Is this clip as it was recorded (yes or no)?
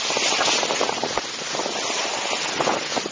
yes